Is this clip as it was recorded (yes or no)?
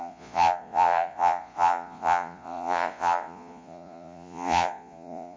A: no